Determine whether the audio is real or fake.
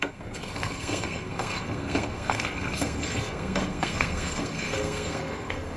fake